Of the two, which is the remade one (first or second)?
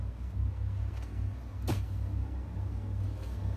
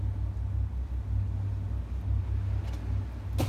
first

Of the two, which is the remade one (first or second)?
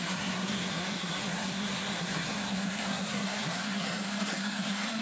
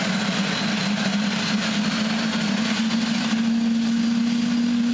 first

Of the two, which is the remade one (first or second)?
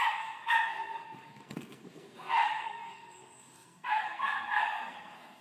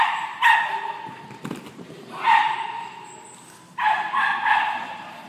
first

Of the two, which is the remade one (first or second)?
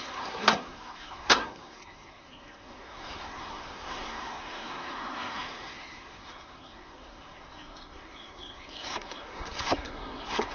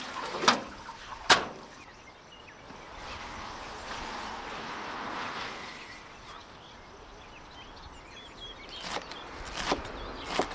first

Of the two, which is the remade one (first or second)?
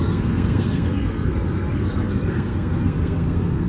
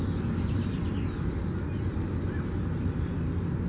first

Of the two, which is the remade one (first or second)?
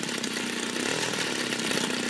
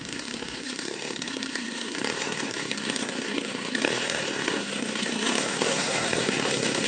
second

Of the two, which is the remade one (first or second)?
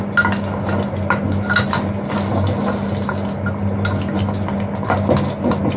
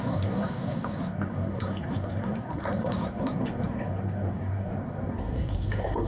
second